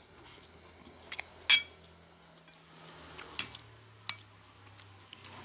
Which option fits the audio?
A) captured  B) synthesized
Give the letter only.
A